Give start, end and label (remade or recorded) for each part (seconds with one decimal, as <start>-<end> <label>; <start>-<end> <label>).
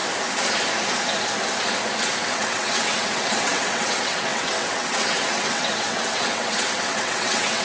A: 0.0-2.0 recorded; 2.0-7.6 remade